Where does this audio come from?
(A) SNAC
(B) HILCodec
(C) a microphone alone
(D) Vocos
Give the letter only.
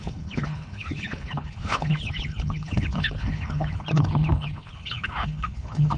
B